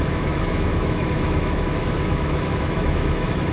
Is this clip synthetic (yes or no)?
yes